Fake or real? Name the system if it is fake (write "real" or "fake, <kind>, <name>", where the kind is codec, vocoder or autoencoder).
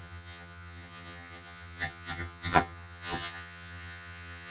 fake, vocoder, HiFi-GAN